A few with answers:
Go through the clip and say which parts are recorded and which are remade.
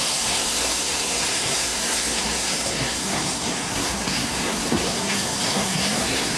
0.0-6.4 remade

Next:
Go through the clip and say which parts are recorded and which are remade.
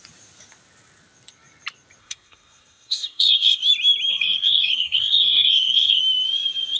0.0-2.0 recorded; 2.0-3.6 remade; 3.6-4.1 recorded; 4.1-6.0 remade; 6.0-6.8 recorded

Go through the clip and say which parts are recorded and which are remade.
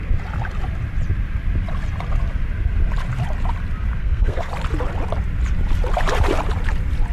0.0-4.0 recorded; 4.0-4.5 remade; 4.5-7.1 recorded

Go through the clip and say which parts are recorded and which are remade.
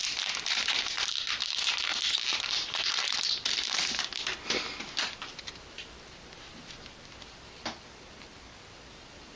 0.0-1.9 recorded; 1.9-3.3 remade; 3.3-9.4 recorded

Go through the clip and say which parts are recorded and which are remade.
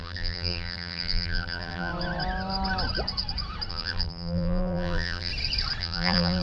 0.0-1.9 remade; 1.9-3.7 recorded; 3.7-5.3 remade; 5.3-5.8 recorded; 5.8-6.4 remade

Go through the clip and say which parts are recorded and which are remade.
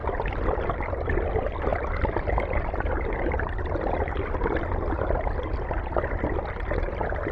0.0-7.3 recorded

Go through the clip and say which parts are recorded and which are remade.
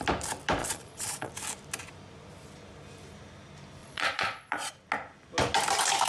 0.0-0.6 recorded; 0.6-1.3 remade; 1.3-3.8 recorded; 3.8-4.7 remade; 4.7-6.1 recorded